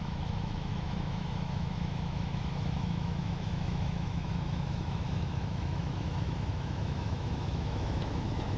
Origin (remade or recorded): remade